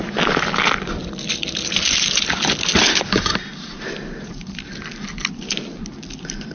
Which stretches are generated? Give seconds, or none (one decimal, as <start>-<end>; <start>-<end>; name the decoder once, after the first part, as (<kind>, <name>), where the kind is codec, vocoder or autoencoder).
1.0-4.9 (vocoder, BigVGAN v2)